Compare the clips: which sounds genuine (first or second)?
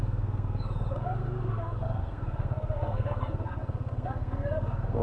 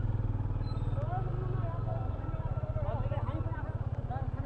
second